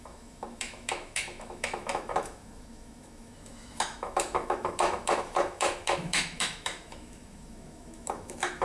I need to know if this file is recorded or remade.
remade